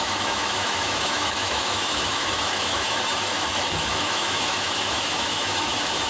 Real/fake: fake